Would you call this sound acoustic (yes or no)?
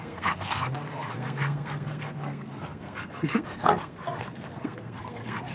no